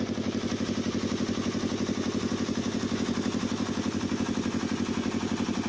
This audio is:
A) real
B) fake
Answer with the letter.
A